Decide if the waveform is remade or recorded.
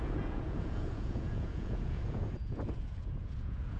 remade